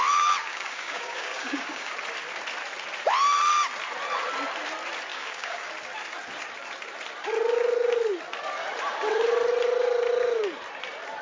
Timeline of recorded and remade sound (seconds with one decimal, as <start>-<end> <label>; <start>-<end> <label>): 0.0-0.4 recorded; 0.4-1.9 remade; 1.9-5.1 recorded; 5.1-5.7 remade; 5.7-11.2 recorded